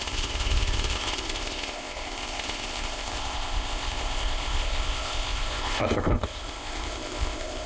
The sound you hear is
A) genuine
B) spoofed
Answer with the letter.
B